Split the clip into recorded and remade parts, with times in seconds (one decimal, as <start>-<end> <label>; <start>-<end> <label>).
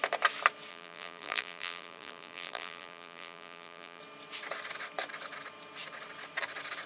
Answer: 0.0-0.7 recorded; 0.7-4.0 remade; 4.0-6.9 recorded